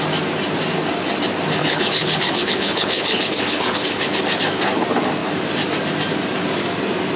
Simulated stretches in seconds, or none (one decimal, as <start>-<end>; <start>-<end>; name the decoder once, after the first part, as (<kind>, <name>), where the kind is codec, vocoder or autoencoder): 1.6-4.2 (codec, HILCodec)